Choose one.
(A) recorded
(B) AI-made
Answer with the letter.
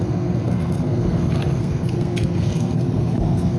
B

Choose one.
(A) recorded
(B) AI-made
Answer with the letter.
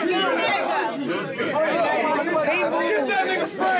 A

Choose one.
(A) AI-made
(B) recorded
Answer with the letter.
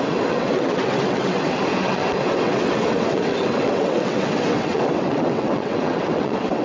A